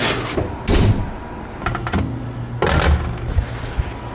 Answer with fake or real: real